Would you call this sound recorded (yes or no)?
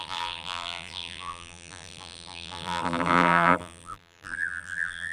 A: no